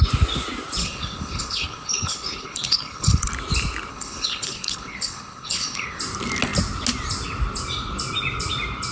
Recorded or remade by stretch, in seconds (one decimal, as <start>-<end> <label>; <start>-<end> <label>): 0.0-0.8 recorded; 0.8-3.3 remade; 3.3-3.9 recorded; 3.9-6.0 remade; 6.0-8.9 recorded